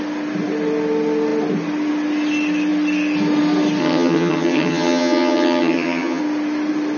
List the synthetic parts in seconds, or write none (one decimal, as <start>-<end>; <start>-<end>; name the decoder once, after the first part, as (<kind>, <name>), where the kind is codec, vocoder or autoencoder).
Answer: 3.8-6.2 (vocoder, HiFi-GAN)